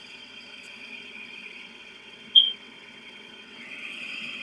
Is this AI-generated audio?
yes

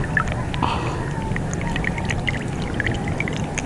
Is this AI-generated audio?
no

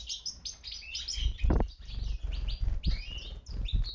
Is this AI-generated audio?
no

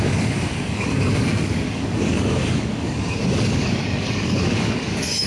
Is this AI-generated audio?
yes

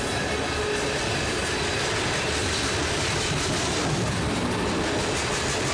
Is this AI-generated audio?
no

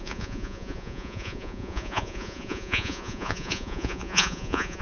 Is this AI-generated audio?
yes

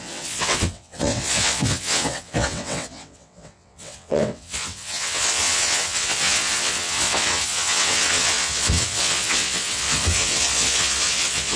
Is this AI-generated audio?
yes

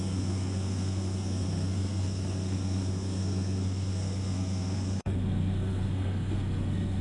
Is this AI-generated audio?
yes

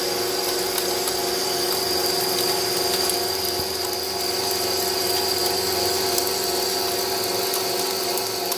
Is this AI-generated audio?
no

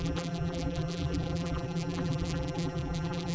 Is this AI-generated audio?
yes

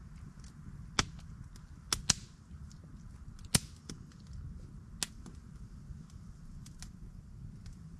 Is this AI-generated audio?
no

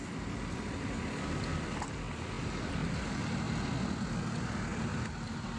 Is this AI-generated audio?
no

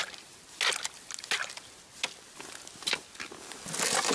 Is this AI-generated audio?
no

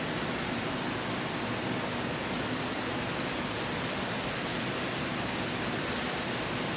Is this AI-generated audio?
no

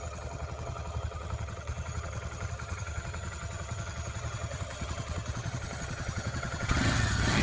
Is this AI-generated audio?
yes